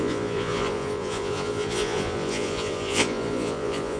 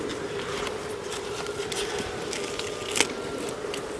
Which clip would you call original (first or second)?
second